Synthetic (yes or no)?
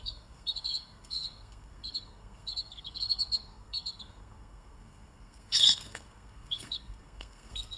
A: yes